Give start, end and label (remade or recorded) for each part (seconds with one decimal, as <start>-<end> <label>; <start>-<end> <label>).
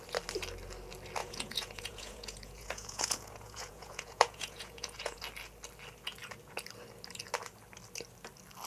0.0-1.2 recorded; 1.2-5.2 remade; 5.2-8.7 recorded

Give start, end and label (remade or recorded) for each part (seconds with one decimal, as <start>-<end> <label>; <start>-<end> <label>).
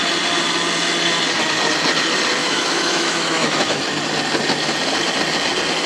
0.0-2.4 recorded; 2.4-3.7 remade; 3.7-5.9 recorded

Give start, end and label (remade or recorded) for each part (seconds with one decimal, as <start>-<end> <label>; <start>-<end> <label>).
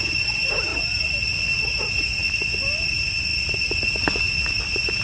0.0-0.7 remade; 0.7-1.8 recorded; 1.8-2.2 remade; 2.2-2.9 recorded; 2.9-3.3 remade; 3.3-4.2 recorded; 4.2-5.0 remade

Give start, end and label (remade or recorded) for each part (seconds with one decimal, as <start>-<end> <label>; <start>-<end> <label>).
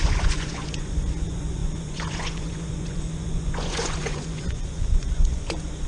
0.0-5.9 remade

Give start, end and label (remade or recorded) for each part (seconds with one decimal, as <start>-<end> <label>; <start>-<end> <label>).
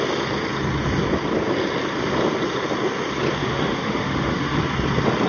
0.0-3.4 recorded; 3.4-4.6 remade; 4.6-5.3 recorded